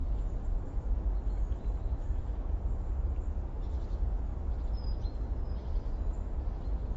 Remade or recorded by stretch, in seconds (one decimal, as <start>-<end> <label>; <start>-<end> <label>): 0.0-3.4 remade; 3.4-7.0 recorded